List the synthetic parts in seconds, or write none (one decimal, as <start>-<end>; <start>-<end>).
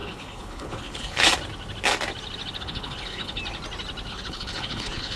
0.0-1.3; 2.6-3.4; 4.1-5.2